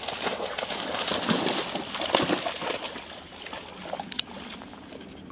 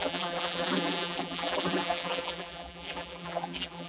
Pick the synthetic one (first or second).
second